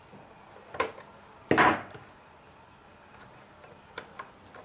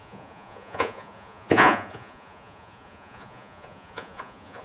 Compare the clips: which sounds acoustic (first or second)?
first